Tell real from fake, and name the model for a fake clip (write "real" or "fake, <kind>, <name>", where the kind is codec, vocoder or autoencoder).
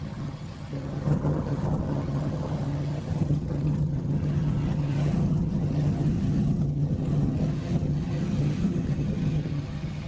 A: fake, vocoder, HiFi-GAN